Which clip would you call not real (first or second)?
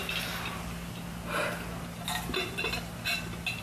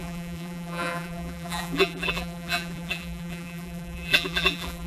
second